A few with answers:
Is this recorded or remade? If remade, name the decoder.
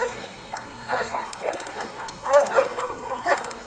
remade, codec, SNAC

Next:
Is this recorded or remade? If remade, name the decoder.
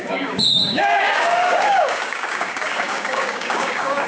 remade, codec, DAC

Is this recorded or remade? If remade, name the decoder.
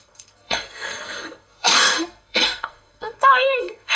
remade, codec, SNAC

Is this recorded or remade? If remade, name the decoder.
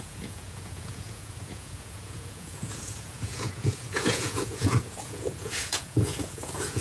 remade, vocoder, Vocos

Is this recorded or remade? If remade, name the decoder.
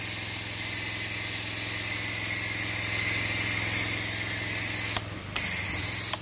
recorded